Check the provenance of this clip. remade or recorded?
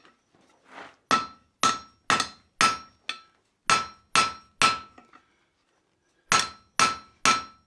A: recorded